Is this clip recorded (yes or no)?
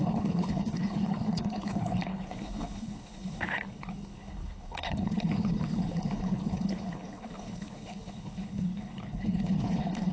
no